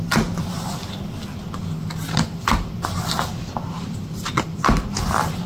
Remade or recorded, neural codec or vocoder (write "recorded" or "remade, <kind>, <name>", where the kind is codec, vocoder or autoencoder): recorded